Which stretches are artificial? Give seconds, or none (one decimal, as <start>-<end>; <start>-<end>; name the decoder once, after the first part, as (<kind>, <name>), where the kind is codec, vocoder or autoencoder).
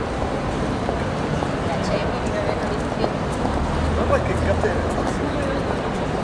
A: 0.0-2.0 (vocoder, BigVGAN v2); 5.7-6.2